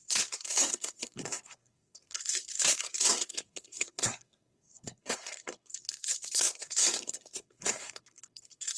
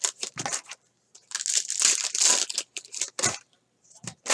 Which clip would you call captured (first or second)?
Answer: second